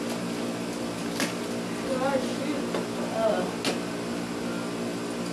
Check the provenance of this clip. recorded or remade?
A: recorded